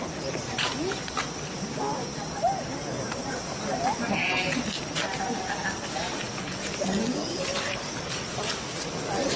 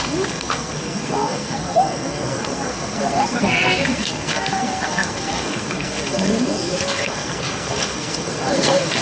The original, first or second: first